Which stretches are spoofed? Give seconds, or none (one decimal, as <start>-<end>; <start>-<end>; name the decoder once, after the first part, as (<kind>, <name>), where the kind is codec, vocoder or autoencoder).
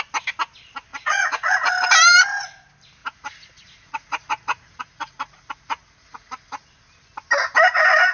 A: 0.9-1.7 (vocoder, Vocos); 3.0-6.6